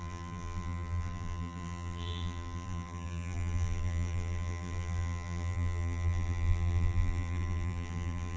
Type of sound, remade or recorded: remade